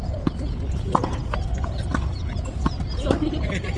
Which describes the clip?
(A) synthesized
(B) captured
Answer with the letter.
B